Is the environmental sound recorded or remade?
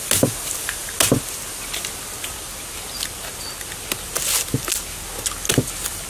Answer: recorded